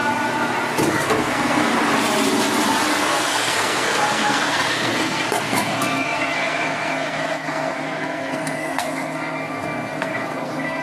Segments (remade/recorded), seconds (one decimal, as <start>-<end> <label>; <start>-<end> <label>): 0.0-0.9 recorded; 0.9-1.7 remade; 1.7-2.9 recorded; 2.9-10.8 remade